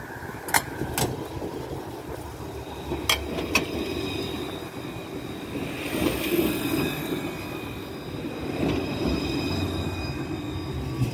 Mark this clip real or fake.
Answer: real